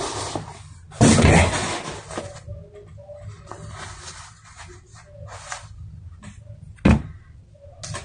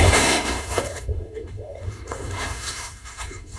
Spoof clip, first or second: second